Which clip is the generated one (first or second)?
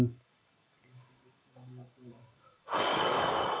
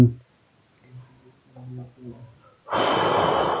first